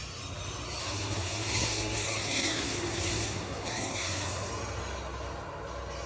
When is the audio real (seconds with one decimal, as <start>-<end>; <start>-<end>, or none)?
0.0-0.8; 4.5-6.1